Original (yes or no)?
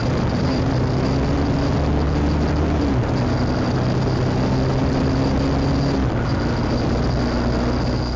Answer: yes